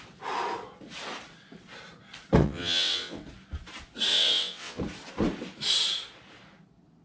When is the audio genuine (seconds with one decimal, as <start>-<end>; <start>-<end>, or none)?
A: 0.0-2.4; 3.2-4.1; 4.8-7.0